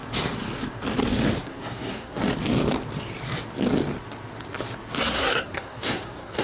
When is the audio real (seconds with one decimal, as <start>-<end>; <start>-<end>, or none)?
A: 0.0-1.4; 2.2-5.0